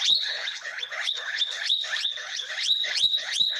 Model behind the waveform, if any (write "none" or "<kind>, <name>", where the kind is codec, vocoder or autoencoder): codec, HILCodec